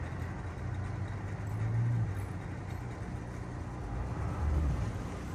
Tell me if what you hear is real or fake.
real